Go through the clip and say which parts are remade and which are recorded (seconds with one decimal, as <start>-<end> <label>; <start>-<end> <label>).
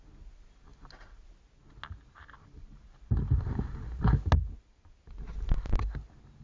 0.0-6.4 recorded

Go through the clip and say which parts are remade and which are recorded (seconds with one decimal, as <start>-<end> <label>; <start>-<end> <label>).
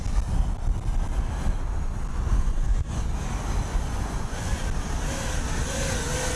0.0-2.1 recorded; 2.1-3.0 remade; 3.0-3.7 recorded; 3.7-4.5 remade; 4.5-6.4 recorded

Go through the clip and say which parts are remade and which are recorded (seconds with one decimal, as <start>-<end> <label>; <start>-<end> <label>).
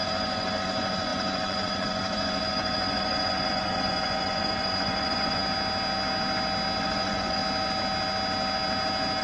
0.0-5.4 remade; 5.4-6.8 recorded; 6.8-7.4 remade; 7.4-9.2 recorded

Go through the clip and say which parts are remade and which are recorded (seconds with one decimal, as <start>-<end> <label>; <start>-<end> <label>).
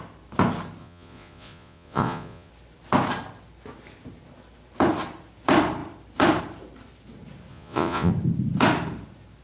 0.0-0.8 recorded; 0.8-2.5 remade; 2.5-7.5 recorded; 7.5-8.1 remade; 8.1-9.4 recorded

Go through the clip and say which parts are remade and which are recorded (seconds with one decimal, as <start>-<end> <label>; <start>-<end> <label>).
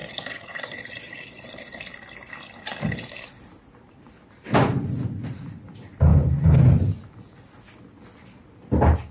0.0-1.5 remade; 1.5-9.1 recorded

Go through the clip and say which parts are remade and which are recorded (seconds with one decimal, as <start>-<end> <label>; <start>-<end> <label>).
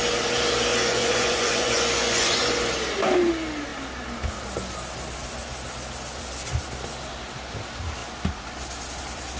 0.0-0.7 recorded; 0.7-2.5 remade; 2.5-9.4 recorded